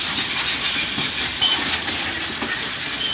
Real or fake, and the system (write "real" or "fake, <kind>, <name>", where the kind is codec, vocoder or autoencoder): real